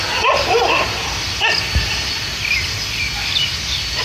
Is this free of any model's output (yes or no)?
yes